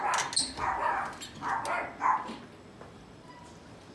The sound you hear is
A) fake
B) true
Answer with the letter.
B